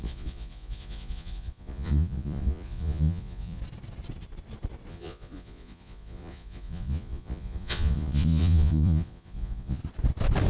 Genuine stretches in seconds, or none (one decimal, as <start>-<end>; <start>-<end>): 3.6-4.9; 9.8-10.5